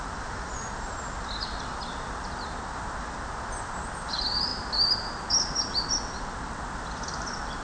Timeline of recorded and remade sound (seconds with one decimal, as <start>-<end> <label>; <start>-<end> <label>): 0.0-7.6 recorded

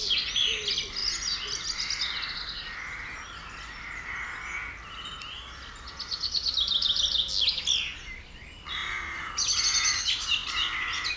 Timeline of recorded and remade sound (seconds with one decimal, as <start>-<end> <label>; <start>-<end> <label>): 0.0-11.2 recorded